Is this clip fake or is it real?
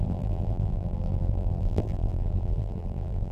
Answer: fake